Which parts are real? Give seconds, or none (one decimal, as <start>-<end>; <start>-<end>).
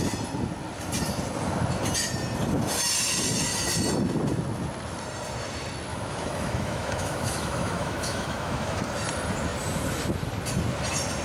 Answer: 0.0-5.9; 8.8-11.2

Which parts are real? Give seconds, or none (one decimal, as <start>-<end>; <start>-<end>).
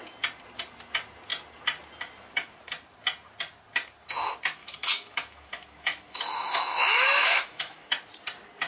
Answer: 0.0-4.6; 7.9-8.7